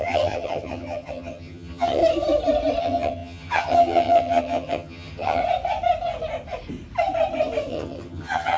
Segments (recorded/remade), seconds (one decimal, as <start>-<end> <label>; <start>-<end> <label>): 0.0-2.0 remade; 2.0-2.8 recorded; 2.8-5.4 remade; 5.4-7.7 recorded; 7.7-8.6 remade